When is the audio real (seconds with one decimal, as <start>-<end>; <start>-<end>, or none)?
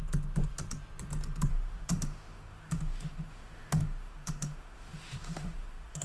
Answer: 0.0-1.5